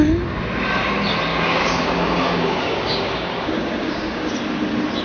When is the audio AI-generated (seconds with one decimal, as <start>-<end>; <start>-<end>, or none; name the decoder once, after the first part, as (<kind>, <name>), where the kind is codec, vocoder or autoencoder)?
1.3-4.3 (codec, DAC)